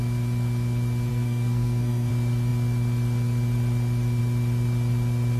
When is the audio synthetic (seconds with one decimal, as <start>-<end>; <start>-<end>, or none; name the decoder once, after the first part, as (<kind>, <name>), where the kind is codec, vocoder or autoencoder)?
1.1-2.1 (codec, SNAC)